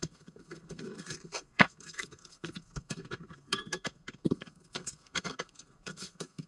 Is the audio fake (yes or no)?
yes